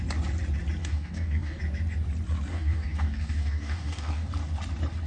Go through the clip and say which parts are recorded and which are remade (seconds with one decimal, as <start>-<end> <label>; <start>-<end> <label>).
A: 0.0-0.8 recorded; 0.8-1.6 remade; 1.6-2.5 recorded; 2.5-4.3 remade; 4.3-5.1 recorded